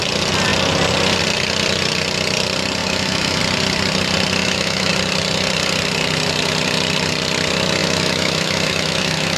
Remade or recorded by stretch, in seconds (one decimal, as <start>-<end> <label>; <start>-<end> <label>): 0.0-2.8 recorded; 2.8-3.4 remade; 3.4-4.4 recorded; 4.4-4.9 remade; 4.9-7.8 recorded; 7.8-9.4 remade